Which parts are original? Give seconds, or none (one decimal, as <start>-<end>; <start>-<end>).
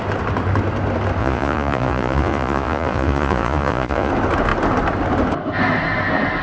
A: 0.0-1.2; 4.1-6.4